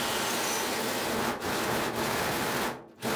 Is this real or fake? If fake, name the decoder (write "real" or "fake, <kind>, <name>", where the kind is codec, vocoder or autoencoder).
real